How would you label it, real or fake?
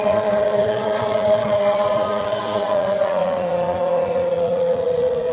fake